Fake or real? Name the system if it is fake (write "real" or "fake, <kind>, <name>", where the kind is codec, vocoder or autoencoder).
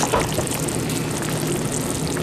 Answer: real